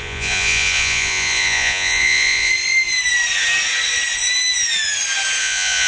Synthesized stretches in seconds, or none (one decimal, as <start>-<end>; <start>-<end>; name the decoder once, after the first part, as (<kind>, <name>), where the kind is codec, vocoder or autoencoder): 0.0-2.5 (vocoder, Vocos); 5.4-5.9